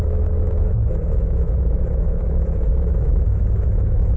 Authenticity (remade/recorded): remade